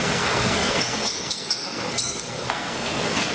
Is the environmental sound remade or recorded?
remade